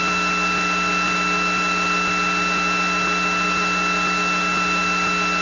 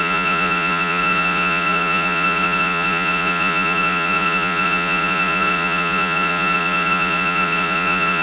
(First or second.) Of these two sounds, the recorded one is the first